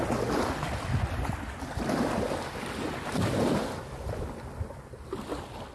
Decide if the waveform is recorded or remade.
recorded